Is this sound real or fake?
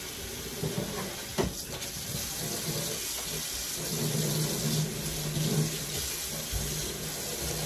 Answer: real